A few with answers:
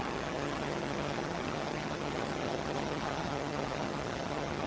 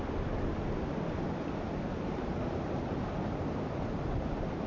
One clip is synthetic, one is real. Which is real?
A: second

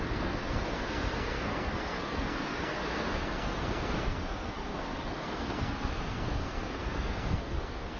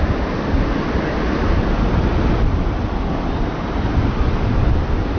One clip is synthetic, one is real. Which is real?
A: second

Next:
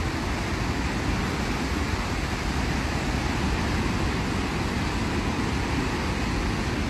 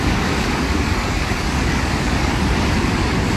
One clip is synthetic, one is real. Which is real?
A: first